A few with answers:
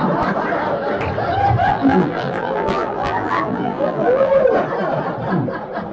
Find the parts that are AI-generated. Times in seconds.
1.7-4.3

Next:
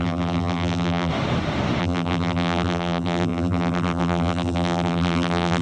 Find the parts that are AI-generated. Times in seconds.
0.0-1.1; 1.8-5.6